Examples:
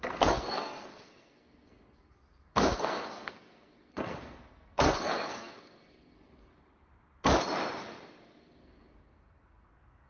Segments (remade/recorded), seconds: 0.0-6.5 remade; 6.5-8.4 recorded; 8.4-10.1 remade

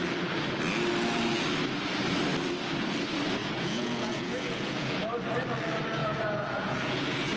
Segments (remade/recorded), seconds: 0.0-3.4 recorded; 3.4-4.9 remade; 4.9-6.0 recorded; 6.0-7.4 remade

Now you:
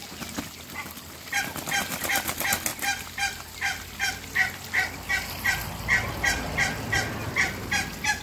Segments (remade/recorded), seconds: 0.0-8.2 recorded

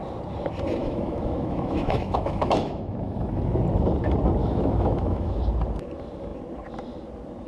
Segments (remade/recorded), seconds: 0.0-0.8 recorded; 0.8-3.4 remade; 3.4-4.4 recorded; 4.4-5.4 remade; 5.4-7.5 recorded